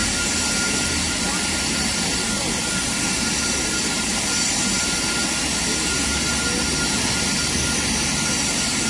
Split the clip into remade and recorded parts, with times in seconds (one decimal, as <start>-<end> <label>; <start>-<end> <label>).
0.0-8.9 recorded